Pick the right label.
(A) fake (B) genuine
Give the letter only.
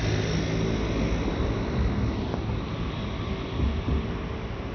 B